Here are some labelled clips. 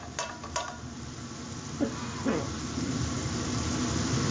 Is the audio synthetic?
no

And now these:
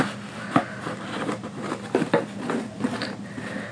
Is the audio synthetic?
no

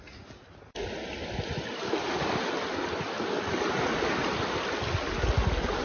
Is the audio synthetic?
no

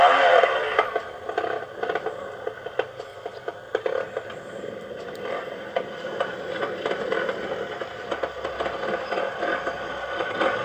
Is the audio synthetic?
yes